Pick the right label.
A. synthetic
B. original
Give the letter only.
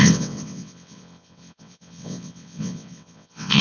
A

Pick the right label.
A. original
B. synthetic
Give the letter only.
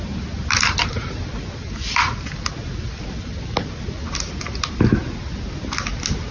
A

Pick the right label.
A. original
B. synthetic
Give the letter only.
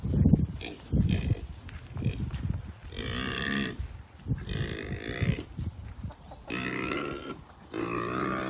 A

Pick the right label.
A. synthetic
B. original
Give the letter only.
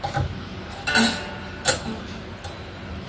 B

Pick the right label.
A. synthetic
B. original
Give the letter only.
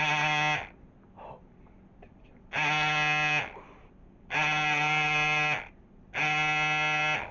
B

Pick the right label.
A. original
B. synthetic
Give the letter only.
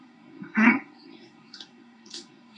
B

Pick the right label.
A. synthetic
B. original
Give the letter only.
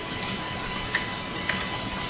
B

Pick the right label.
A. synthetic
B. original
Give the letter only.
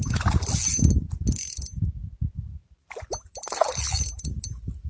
B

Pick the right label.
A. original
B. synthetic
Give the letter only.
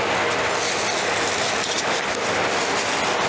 A